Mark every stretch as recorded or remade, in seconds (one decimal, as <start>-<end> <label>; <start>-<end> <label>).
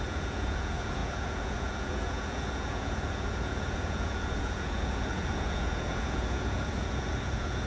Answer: 0.0-7.7 remade